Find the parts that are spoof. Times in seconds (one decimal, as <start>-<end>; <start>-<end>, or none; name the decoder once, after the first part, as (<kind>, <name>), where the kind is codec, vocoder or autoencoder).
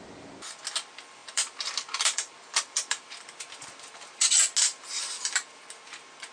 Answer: 1.2-3.4 (vocoder, BigVGAN v2)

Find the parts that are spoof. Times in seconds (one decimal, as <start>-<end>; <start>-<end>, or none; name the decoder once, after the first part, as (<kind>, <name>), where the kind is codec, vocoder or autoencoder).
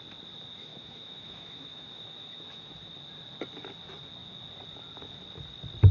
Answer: 0.7-2.7 (autoencoder, DAC-VAE)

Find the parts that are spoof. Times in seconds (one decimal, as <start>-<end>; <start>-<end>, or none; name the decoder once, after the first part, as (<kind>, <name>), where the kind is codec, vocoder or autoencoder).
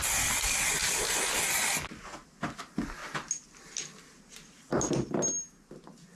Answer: none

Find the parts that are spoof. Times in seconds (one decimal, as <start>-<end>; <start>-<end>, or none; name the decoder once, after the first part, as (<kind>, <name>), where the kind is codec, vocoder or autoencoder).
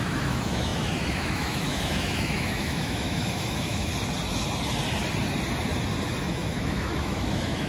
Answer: 0.0-3.9 (autoencoder, DAC-VAE); 6.2-7.7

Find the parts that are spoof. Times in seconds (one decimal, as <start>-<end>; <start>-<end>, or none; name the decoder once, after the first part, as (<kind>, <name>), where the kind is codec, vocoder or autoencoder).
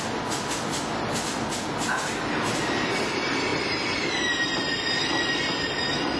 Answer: none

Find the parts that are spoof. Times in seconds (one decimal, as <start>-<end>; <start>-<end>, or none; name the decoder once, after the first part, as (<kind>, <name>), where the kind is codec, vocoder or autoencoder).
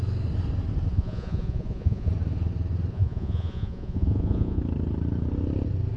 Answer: 0.9-2.1 (vocoder, Vocos); 2.9-4.6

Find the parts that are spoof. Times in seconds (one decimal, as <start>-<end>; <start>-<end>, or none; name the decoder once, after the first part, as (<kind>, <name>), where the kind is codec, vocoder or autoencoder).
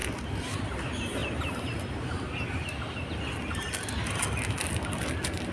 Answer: none